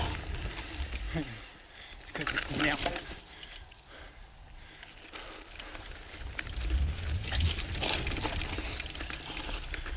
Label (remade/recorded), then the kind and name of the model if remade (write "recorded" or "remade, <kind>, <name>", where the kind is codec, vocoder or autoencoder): recorded